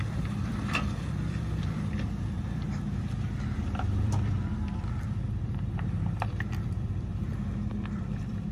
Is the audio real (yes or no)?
no